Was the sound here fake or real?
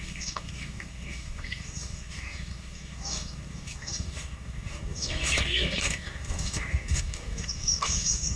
fake